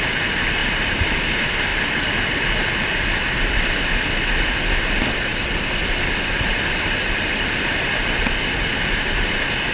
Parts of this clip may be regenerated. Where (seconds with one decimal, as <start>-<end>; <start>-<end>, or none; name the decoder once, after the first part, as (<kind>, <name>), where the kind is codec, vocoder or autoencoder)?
0.6-1.2 (vocoder, BigVGAN v2); 1.7-3.2; 5.3-7.9